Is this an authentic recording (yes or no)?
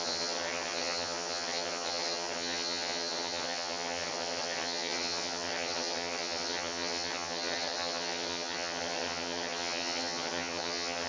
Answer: no